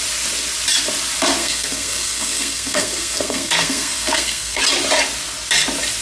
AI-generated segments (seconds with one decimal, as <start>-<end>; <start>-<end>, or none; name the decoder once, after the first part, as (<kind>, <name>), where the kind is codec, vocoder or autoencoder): 1.4-4.6 (codec, SNAC)